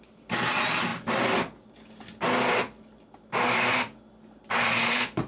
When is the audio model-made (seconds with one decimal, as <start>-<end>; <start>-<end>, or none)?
none